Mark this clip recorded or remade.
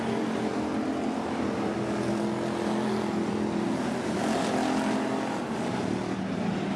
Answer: recorded